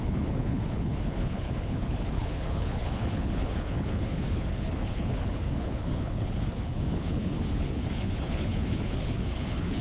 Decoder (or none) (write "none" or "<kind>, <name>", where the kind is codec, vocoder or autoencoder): codec, HILCodec